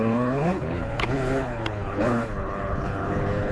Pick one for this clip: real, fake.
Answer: fake